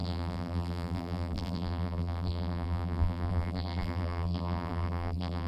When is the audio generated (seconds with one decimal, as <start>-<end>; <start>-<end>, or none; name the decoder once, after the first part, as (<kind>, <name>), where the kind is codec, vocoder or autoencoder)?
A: 0.0-5.5 (vocoder, BigVGAN v2)